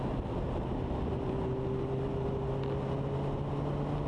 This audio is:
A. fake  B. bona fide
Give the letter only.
B